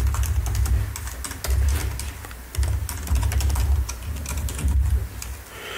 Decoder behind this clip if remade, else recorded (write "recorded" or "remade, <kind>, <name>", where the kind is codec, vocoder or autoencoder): recorded